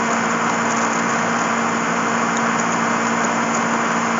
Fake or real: real